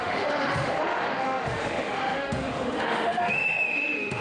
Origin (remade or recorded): remade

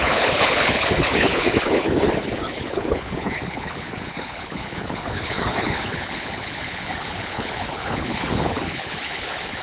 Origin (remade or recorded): remade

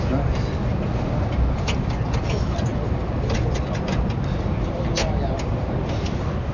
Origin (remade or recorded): recorded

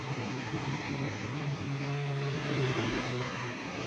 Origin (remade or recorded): remade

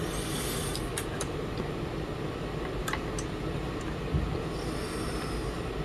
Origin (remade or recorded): recorded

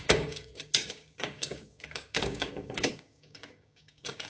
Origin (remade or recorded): remade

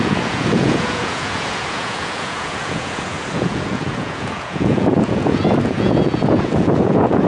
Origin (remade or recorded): remade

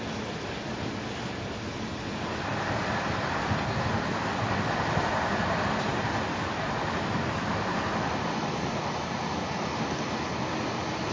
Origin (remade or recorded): recorded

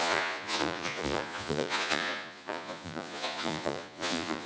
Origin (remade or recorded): remade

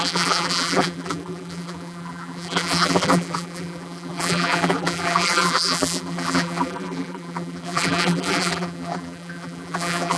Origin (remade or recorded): remade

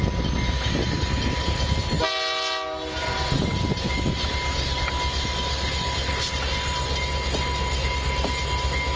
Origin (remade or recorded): recorded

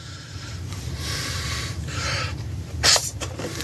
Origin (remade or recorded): remade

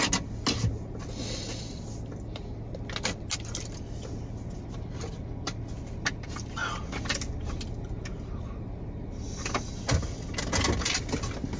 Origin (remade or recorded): recorded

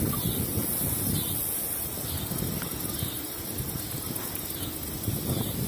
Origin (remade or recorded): recorded